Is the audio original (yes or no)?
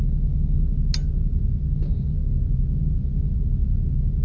yes